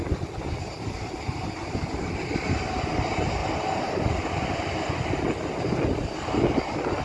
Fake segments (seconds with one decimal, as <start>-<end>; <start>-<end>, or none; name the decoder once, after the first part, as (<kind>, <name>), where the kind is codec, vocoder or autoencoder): 3.4-5.8 (vocoder, BigVGAN v2)